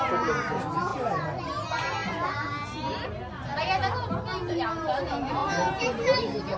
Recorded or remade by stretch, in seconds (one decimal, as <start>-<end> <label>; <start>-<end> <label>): 0.0-6.6 recorded